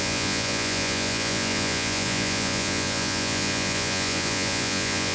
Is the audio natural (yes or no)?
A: no